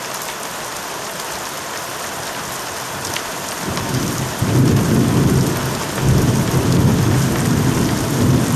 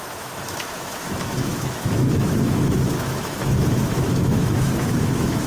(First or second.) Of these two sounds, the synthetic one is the second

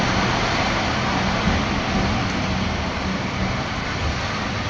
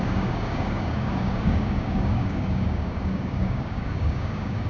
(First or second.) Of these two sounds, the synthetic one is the second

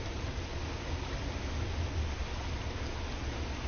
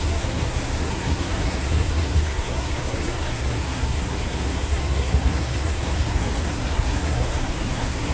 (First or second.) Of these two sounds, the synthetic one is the second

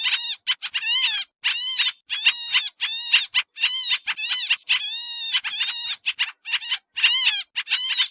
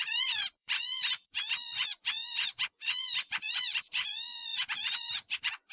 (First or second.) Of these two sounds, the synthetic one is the second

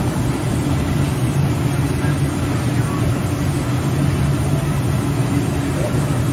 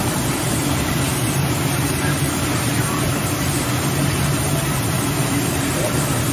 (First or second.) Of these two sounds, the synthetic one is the second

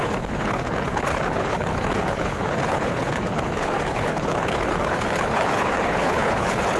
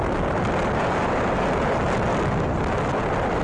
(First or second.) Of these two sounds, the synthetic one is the first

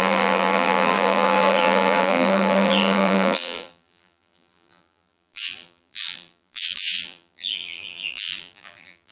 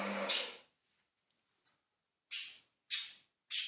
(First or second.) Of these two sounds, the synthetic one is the first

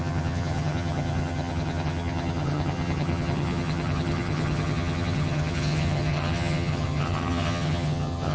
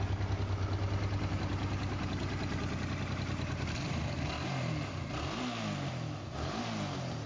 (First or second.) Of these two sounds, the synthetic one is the first